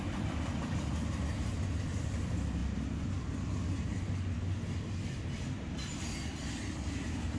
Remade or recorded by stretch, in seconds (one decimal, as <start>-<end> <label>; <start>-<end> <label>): 0.0-7.4 recorded